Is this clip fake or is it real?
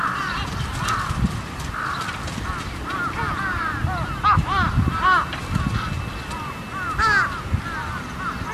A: real